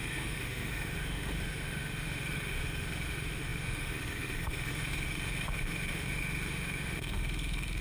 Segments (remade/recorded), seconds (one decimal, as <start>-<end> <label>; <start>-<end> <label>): 0.0-7.8 remade